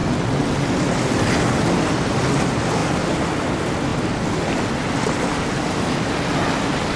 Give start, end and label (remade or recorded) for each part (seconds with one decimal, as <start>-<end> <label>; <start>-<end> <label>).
0.0-7.0 recorded